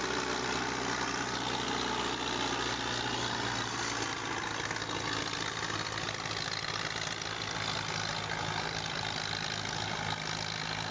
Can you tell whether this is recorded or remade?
recorded